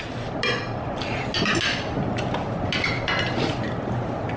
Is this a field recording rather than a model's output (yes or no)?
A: yes